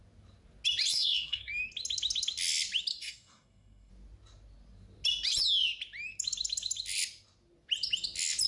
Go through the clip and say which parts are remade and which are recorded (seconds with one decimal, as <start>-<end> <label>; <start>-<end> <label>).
0.0-0.9 recorded; 0.9-1.5 remade; 1.5-2.9 recorded; 2.9-3.9 remade; 3.9-8.5 recorded